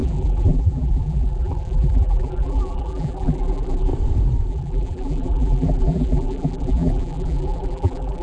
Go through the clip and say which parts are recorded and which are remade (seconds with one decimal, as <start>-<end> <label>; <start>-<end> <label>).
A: 0.0-3.9 remade; 3.9-4.5 recorded; 4.5-8.2 remade